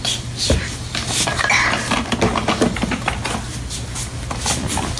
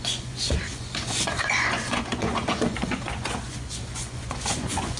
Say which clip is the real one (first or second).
first